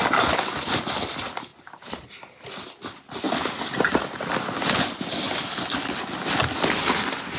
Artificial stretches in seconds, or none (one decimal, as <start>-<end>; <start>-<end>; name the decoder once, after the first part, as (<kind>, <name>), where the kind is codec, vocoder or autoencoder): none